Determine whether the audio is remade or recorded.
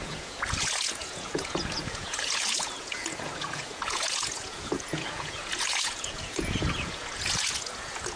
remade